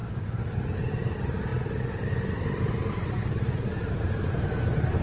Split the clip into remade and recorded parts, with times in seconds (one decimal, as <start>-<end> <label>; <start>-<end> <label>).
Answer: 0.0-5.0 remade